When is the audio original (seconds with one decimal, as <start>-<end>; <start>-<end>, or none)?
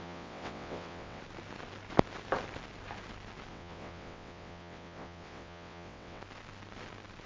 1.2-3.5; 6.2-7.3